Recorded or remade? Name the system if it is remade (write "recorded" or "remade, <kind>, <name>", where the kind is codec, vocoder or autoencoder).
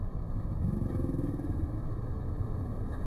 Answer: remade, autoencoder, DAC-VAE